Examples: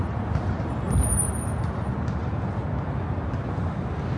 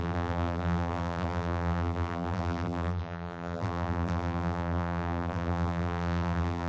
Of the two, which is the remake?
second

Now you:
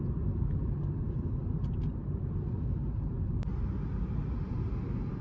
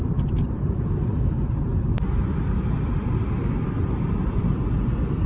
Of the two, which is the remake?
second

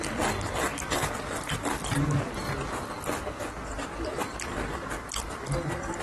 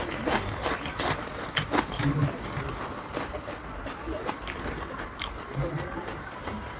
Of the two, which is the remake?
second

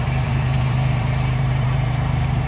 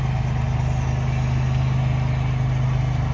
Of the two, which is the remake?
first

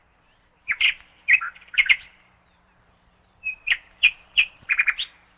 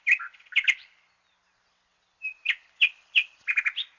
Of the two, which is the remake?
first